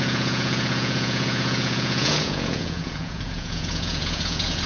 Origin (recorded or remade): remade